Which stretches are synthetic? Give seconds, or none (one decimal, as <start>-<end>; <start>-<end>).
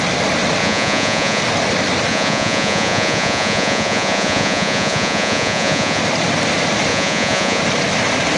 0.6-1.4; 2.1-6.0; 6.9-7.6